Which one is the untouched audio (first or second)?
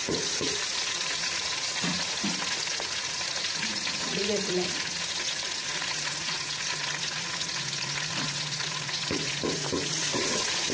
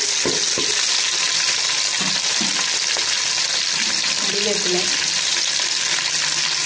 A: second